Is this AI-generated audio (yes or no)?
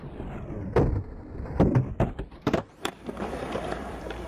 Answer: yes